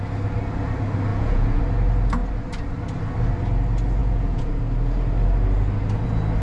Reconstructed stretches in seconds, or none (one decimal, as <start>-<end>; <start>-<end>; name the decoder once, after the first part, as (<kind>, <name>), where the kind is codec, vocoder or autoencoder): 1.1-1.6 (vocoder, Vocos); 4.0-4.5